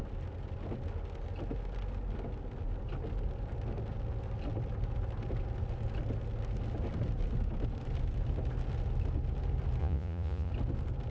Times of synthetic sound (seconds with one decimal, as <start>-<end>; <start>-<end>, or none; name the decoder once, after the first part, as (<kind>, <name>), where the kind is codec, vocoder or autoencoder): 9.8-10.5 (vocoder, Vocos)